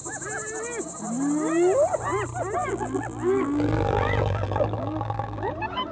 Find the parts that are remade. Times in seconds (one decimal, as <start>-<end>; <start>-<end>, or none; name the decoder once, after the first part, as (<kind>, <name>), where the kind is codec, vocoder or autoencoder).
2.6-5.5 (vocoder, BigVGAN v2)